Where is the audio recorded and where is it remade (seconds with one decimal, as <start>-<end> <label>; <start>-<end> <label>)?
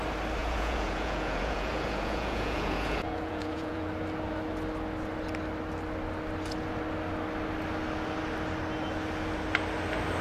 0.0-0.4 recorded; 0.4-3.9 remade; 3.9-10.2 recorded